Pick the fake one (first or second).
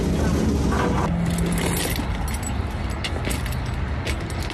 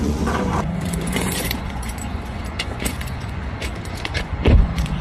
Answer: second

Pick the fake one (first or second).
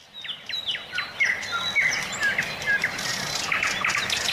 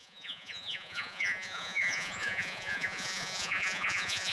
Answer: second